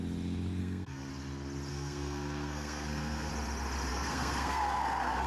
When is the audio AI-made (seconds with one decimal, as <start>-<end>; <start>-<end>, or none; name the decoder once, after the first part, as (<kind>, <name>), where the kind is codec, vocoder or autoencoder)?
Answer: 0.6-1.1 (codec, SNAC); 1.7-3.3; 3.9-5.3